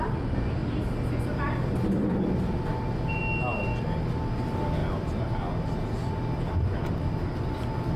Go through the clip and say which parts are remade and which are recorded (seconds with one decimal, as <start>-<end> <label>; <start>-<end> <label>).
0.0-8.0 recorded